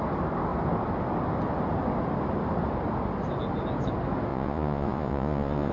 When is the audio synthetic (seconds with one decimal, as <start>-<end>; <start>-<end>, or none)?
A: 4.3-5.7